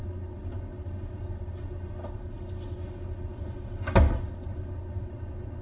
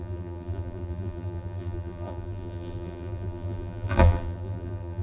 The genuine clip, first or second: first